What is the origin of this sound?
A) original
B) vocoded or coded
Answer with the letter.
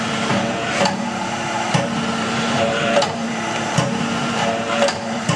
B